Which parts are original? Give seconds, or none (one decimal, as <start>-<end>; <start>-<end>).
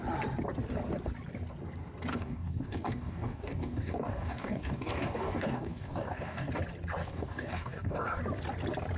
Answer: 0.0-2.1; 6.5-7.0; 8.2-9.0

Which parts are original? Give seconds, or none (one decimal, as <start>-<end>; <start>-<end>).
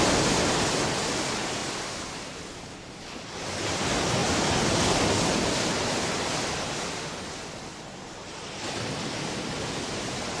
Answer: 0.0-10.4